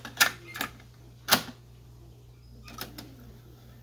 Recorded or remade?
recorded